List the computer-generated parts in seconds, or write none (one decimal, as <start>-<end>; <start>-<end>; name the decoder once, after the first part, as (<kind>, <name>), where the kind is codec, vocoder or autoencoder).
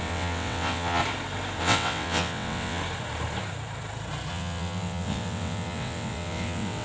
0.0-1.0 (vocoder, WaveNeXt); 1.6-2.8; 4.3-6.8